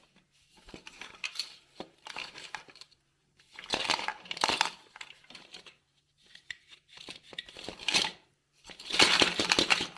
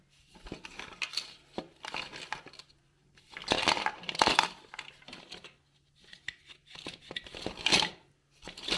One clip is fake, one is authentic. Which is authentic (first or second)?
second